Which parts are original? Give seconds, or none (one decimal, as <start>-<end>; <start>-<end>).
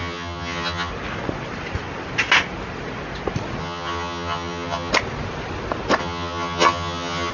0.9-3.6; 4.9-6.0